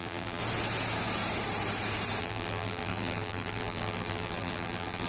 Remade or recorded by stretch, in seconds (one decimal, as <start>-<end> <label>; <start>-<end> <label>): 0.0-0.4 remade; 0.4-2.2 recorded; 2.2-5.1 remade